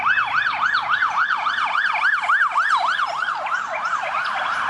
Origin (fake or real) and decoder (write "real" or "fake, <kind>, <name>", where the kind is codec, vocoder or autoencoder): real